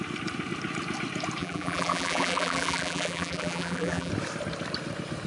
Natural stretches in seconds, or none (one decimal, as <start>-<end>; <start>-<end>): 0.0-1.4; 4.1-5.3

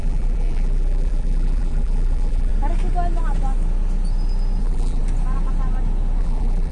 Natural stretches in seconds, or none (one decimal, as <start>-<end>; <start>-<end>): 2.5-4.6; 5.0-6.2

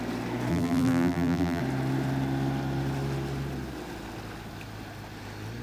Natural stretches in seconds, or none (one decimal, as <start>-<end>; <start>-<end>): 0.0-0.5; 1.6-5.6